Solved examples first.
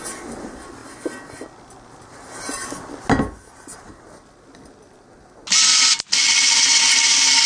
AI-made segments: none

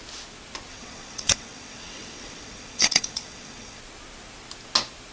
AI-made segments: 0.7-3.8